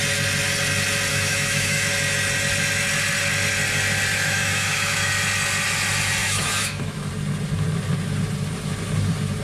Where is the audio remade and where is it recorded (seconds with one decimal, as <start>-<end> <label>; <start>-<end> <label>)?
0.0-1.1 recorded; 1.1-1.8 remade; 1.8-4.1 recorded; 4.1-5.1 remade; 5.1-6.2 recorded; 6.2-7.1 remade; 7.1-9.4 recorded